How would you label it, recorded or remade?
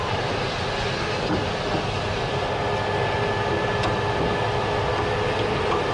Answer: recorded